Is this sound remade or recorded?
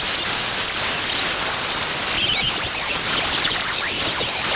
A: recorded